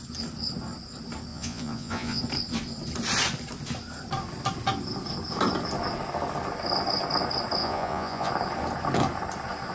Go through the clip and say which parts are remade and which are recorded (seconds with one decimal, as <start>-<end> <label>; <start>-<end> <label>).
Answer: 0.0-1.3 recorded; 1.3-2.2 remade; 2.2-7.6 recorded; 7.6-8.3 remade; 8.3-9.7 recorded